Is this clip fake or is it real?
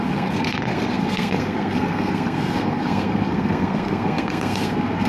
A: fake